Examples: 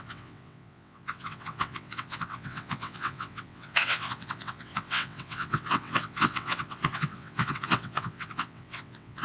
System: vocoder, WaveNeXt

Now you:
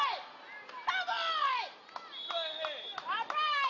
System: none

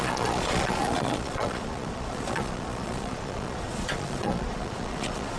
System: vocoder, Vocos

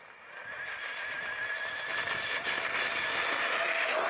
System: none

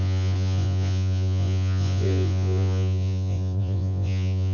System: vocoder, Vocos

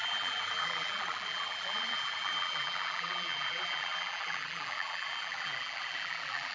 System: vocoder, BigVGAN v2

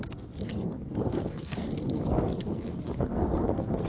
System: codec, SNAC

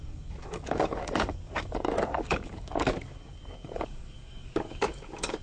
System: codec, DAC